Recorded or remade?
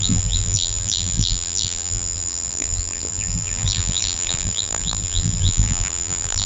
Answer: remade